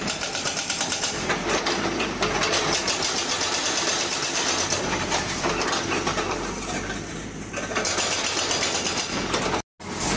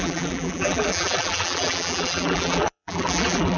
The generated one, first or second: second